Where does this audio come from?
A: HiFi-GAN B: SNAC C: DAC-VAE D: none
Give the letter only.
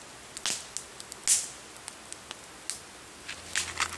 D